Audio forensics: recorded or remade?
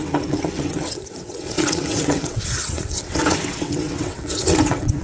remade